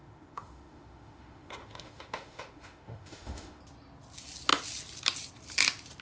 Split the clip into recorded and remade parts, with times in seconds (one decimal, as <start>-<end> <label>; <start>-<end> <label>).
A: 0.0-3.6 remade; 3.6-6.0 recorded